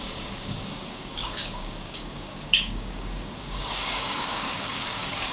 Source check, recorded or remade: remade